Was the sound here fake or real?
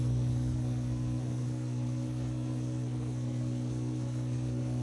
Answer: fake